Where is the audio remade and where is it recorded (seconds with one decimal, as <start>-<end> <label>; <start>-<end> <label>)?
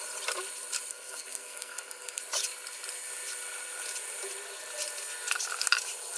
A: 0.0-0.9 recorded; 0.9-2.2 remade; 2.2-6.2 recorded